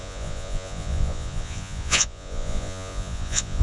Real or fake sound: fake